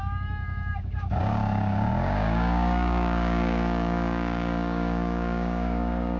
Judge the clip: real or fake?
fake